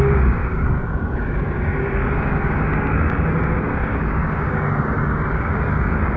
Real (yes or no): no